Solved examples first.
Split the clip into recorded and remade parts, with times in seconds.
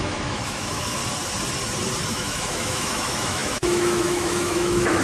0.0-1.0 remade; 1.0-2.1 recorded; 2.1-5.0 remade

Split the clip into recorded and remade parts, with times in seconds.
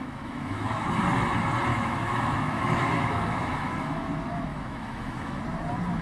0.0-0.9 remade; 0.9-1.7 recorded; 1.7-4.1 remade; 4.1-4.5 recorded; 4.5-5.4 remade; 5.4-6.0 recorded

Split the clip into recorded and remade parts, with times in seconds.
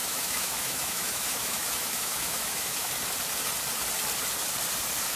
0.0-2.9 remade; 2.9-5.2 recorded